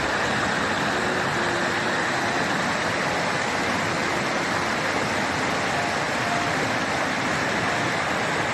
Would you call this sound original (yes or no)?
yes